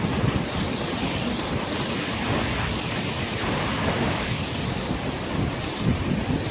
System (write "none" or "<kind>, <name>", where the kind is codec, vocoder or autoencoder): none